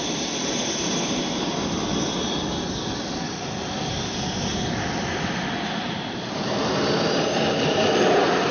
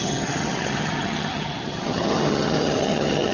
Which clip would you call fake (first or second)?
second